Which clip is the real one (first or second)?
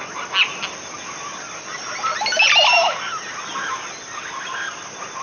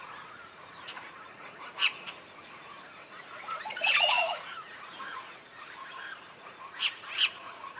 first